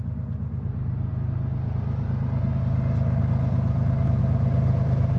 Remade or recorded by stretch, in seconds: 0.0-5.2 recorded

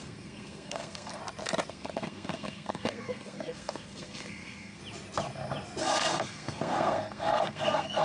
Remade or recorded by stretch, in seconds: 0.0-1.2 remade; 1.2-1.7 recorded; 1.7-4.8 remade; 4.8-5.8 recorded; 5.8-8.0 remade

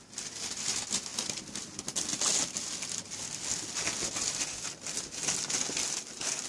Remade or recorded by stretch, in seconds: 0.0-6.5 recorded

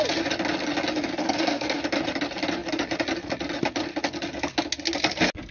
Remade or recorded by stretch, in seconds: 0.0-1.2 recorded; 1.2-1.8 remade; 1.8-5.5 recorded

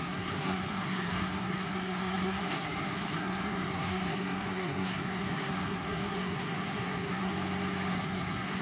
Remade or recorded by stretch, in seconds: 0.0-7.3 remade; 7.3-7.9 recorded; 7.9-8.6 remade